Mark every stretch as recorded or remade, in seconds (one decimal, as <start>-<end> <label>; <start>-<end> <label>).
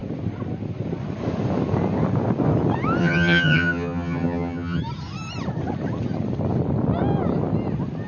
0.0-3.0 recorded; 3.0-4.8 remade; 4.8-8.1 recorded